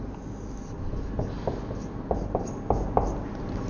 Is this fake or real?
real